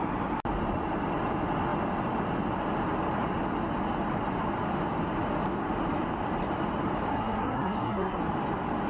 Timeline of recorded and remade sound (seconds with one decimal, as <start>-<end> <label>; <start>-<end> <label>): 0.0-7.1 recorded; 7.1-8.2 remade; 8.2-8.9 recorded